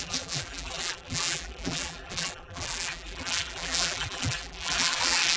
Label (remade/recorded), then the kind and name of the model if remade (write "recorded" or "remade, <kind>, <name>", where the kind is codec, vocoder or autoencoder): remade, vocoder, BigVGAN v2